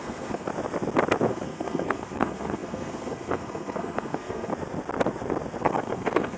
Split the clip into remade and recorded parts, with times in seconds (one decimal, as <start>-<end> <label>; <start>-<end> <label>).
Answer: 0.0-0.5 remade; 0.5-1.3 recorded; 1.3-4.5 remade; 4.5-5.6 recorded; 5.6-6.4 remade

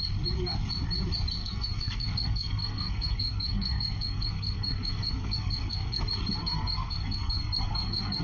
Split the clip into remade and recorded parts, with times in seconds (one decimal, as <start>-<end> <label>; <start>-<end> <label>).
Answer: 0.0-1.4 recorded; 1.4-6.0 remade; 6.0-6.4 recorded; 6.4-8.2 remade

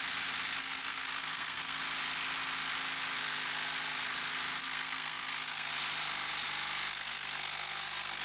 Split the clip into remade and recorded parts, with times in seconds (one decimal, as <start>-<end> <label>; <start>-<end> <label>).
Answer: 0.0-0.6 recorded; 0.6-1.8 remade; 1.8-4.6 recorded; 4.6-5.7 remade; 5.7-6.9 recorded; 6.9-8.2 remade

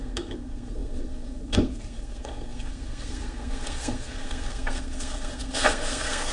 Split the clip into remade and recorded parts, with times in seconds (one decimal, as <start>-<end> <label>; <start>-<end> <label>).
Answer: 0.0-6.3 remade

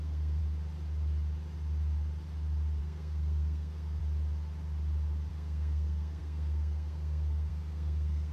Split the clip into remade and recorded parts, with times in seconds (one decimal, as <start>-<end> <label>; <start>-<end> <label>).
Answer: 0.0-0.4 remade; 0.4-2.8 recorded; 2.8-4.0 remade; 4.0-5.3 recorded; 5.3-8.3 remade